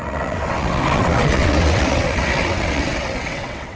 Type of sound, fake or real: fake